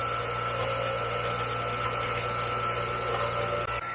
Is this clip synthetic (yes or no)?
no